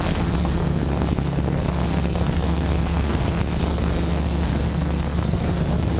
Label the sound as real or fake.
fake